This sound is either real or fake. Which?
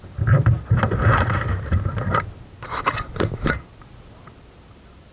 real